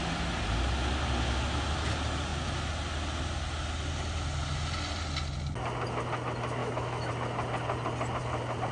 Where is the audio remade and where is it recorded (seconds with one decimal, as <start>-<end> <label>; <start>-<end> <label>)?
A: 0.0-6.6 recorded; 6.6-7.1 remade; 7.1-8.7 recorded